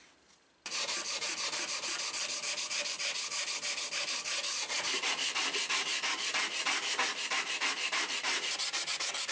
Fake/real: fake